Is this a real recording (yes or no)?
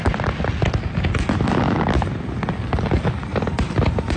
yes